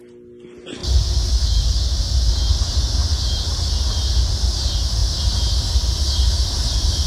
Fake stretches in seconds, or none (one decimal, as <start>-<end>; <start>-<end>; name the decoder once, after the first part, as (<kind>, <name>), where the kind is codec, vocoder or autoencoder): none